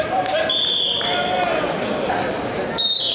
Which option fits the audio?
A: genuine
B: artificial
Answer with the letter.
B